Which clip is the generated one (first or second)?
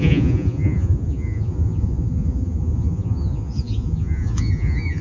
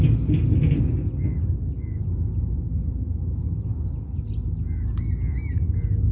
first